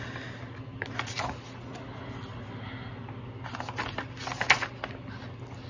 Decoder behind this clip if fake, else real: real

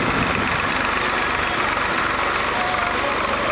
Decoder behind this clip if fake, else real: real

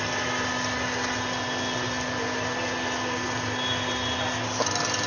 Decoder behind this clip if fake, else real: real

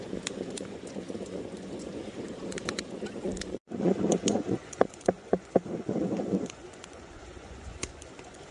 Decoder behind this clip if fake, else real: fake, vocoder, Vocos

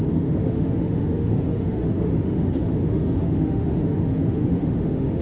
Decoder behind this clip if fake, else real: fake, autoencoder, DAC-VAE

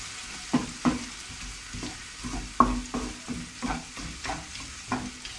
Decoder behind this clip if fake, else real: real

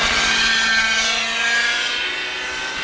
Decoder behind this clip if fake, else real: real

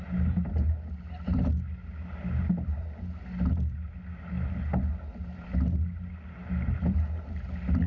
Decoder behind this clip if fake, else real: real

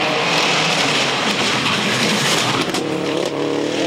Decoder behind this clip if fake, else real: real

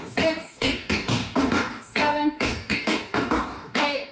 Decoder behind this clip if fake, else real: fake, codec, DAC